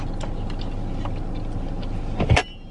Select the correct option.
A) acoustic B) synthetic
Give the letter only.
A